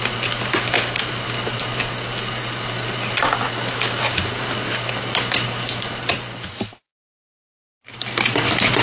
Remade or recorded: recorded